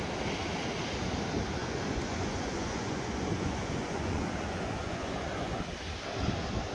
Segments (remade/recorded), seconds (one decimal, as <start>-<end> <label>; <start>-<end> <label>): 0.0-1.6 recorded; 1.6-5.6 remade; 5.6-6.7 recorded